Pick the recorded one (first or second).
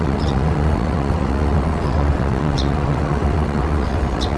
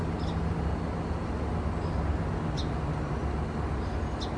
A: second